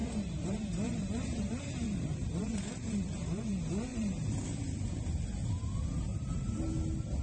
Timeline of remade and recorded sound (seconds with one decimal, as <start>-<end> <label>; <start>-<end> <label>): 0.0-3.5 remade; 3.5-3.9 recorded; 3.9-4.4 remade; 4.4-6.1 recorded; 6.1-6.6 remade; 6.6-7.2 recorded